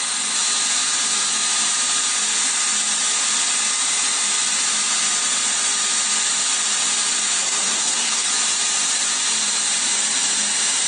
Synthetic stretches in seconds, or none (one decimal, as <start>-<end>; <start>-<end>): 7.4-8.3